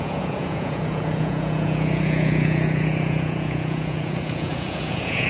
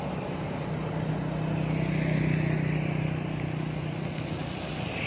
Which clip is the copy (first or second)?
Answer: first